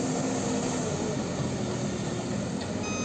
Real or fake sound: real